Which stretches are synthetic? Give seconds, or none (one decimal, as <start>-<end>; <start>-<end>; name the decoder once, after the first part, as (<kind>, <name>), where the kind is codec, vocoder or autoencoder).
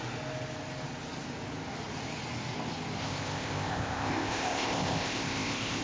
3.0-5.8 (codec, ZipCodec)